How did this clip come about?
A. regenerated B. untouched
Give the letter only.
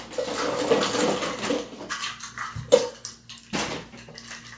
B